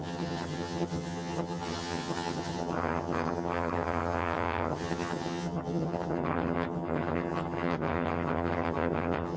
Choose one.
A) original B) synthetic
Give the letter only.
B